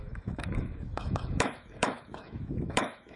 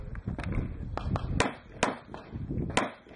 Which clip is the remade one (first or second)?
first